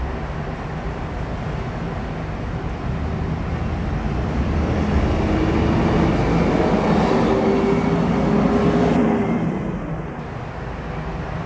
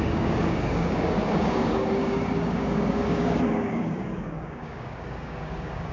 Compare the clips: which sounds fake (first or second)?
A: second